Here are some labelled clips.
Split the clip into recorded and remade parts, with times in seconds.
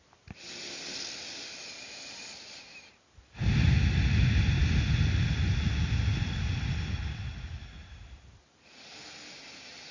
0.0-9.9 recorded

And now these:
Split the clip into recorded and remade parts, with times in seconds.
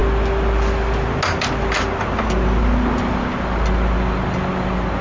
0.0-5.0 recorded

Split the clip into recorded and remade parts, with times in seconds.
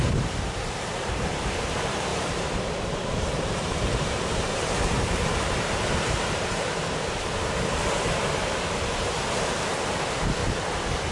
0.0-10.4 remade; 10.4-11.1 recorded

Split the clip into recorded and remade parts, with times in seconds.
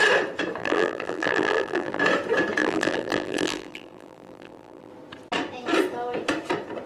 0.0-0.6 recorded; 0.6-2.0 remade; 2.0-2.6 recorded; 2.6-4.9 remade; 4.9-6.9 recorded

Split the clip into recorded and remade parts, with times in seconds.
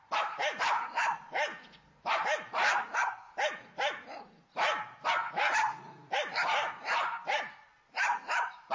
0.0-1.5 remade; 1.5-6.1 recorded; 6.1-8.7 remade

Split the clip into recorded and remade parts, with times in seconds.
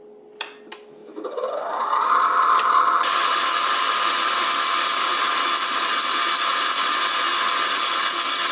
0.0-1.0 recorded; 1.0-5.9 remade; 5.9-6.5 recorded; 6.5-7.2 remade; 7.2-8.5 recorded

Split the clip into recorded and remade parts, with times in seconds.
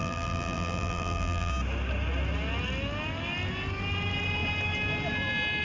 0.0-1.5 remade; 1.5-5.6 recorded